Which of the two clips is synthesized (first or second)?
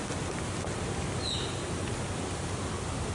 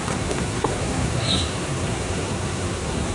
second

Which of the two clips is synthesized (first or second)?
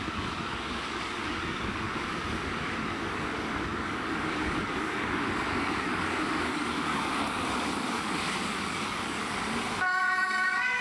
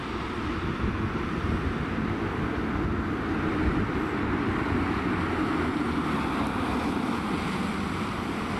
first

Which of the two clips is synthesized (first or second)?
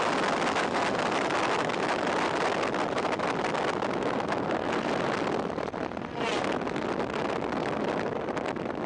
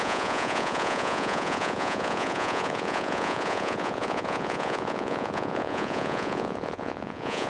second